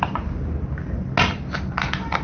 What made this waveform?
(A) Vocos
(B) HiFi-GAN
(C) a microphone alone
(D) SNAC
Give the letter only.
C